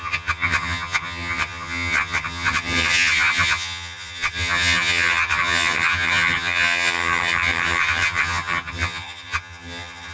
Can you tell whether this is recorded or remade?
remade